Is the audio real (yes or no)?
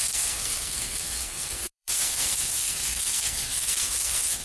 no